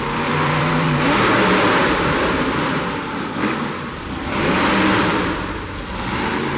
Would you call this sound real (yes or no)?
no